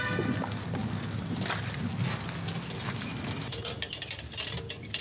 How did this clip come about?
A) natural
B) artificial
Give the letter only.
A